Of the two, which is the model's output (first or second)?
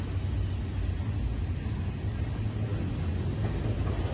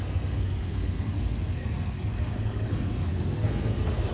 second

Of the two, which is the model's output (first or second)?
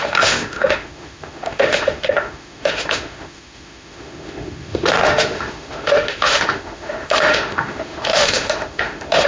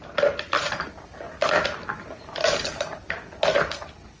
first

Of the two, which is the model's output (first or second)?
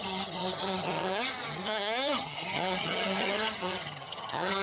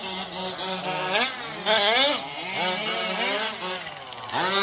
first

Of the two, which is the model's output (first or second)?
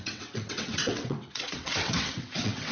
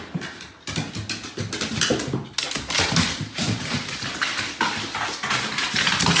first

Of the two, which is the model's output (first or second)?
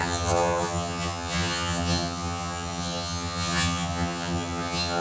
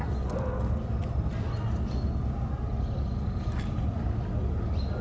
first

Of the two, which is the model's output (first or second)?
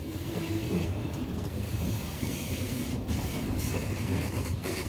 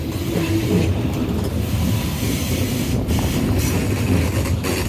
first